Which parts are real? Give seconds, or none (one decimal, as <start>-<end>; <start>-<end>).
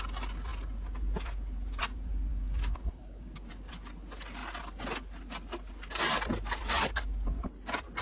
0.0-2.3; 3.5-8.0